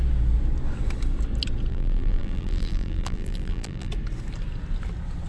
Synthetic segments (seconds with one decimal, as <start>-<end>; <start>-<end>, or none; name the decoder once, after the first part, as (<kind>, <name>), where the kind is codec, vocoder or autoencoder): 1.7-3.9 (vocoder, BigVGAN v2)

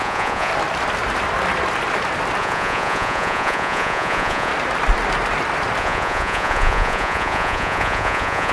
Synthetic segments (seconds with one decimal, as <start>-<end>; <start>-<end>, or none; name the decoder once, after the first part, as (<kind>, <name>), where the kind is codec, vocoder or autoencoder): 0.0-0.5 (vocoder, Vocos); 2.4-4.5; 5.8-8.5